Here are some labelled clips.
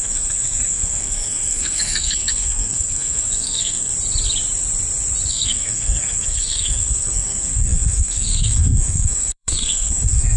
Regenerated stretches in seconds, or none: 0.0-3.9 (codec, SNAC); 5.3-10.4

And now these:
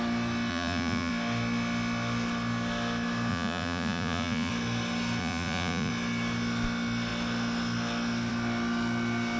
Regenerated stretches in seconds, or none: 0.5-1.1 (vocoder, Vocos); 3.3-4.5; 5.2-5.9

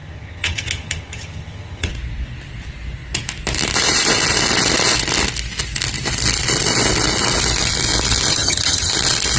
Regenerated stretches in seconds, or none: 0.0-1.9 (vocoder, HiFi-GAN); 8.3-8.9

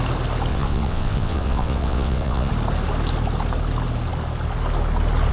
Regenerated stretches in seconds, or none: 0.5-2.5 (vocoder, WaveNeXt)

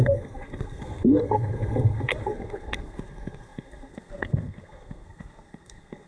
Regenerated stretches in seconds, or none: 0.0-6.1 (codec, SNAC)

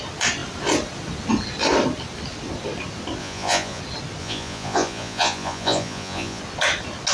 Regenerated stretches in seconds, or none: 3.2-3.8 (vocoder, Vocos); 4.2-6.4

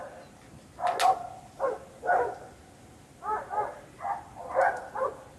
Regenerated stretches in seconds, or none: none